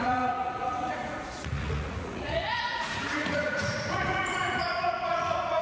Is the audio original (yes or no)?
no